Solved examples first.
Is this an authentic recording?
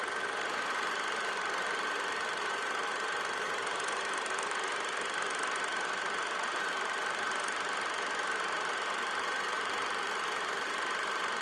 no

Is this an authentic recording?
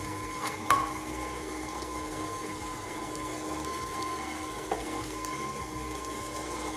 no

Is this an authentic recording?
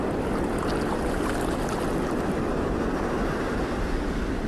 yes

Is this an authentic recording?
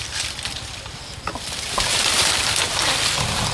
no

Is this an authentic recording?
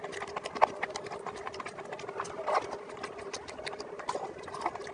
yes